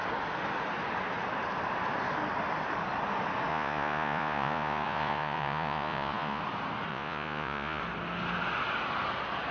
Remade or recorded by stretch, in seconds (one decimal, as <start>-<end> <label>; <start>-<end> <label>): 0.0-3.5 recorded; 3.5-6.4 remade; 6.4-6.9 recorded; 6.9-7.8 remade; 7.8-9.5 recorded